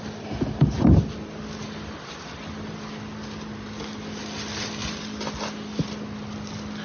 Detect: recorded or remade recorded